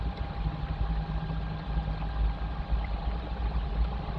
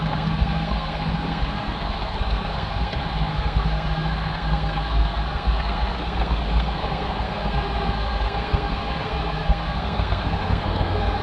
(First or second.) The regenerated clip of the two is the second